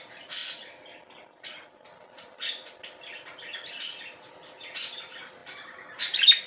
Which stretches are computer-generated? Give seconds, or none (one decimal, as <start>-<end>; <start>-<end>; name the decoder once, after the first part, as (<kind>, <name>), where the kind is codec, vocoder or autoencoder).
none